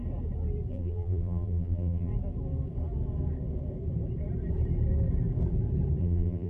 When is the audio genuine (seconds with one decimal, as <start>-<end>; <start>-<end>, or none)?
0.0-0.7; 2.1-6.0